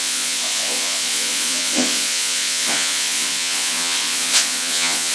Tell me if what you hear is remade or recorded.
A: remade